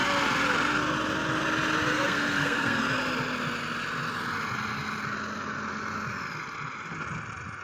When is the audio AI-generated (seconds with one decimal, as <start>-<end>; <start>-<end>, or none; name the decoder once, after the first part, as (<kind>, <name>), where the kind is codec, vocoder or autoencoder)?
1.9-2.8 (codec, SNAC)